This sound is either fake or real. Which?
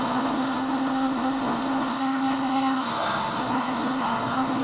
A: fake